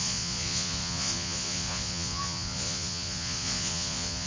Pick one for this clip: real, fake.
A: fake